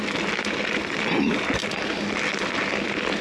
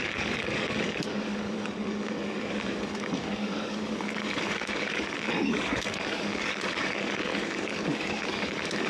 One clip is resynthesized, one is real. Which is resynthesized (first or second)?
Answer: second